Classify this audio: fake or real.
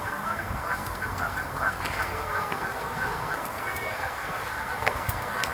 fake